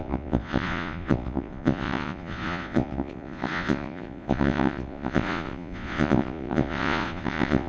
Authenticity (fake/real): fake